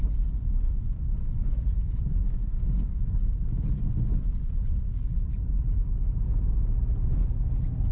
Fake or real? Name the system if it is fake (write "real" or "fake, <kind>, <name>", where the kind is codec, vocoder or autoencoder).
real